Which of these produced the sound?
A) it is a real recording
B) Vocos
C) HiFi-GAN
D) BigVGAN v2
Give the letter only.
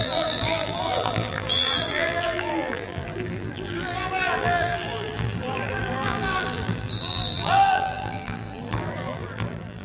D